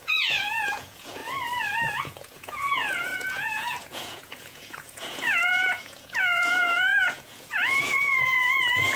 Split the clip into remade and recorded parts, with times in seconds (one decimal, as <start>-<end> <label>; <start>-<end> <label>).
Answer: 0.0-1.2 remade; 1.2-2.0 recorded; 2.0-9.0 remade